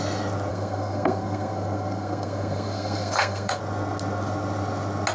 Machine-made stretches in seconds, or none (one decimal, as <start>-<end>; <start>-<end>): 0.5-3.6